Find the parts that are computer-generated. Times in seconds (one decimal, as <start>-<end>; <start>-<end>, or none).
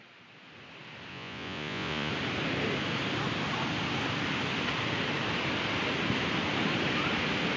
1.1-2.1